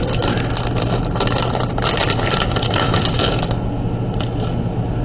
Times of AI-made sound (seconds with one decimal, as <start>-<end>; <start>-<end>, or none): 2.0-3.3